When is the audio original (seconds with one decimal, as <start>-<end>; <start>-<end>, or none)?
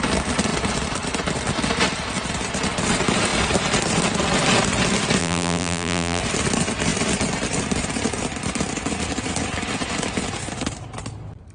0.0-5.2; 6.2-11.5